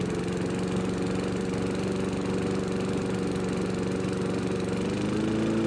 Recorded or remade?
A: recorded